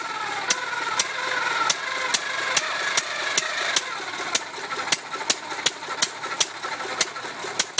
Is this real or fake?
real